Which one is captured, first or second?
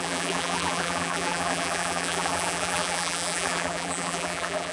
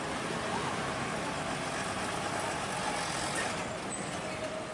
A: second